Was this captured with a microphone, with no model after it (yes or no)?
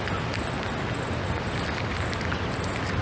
yes